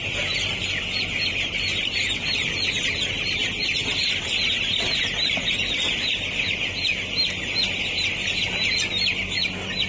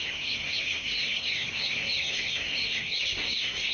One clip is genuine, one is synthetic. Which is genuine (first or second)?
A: first